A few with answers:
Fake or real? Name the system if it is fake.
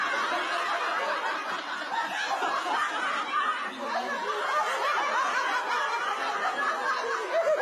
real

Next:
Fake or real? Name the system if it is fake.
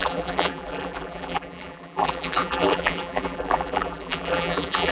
fake, vocoder, BigVGAN v2